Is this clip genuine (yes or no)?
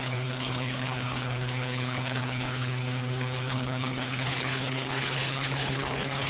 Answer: no